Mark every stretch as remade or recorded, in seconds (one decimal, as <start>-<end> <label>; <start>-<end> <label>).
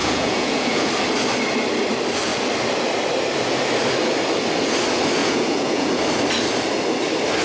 0.0-0.9 remade; 0.9-5.2 recorded; 5.2-5.9 remade; 5.9-7.4 recorded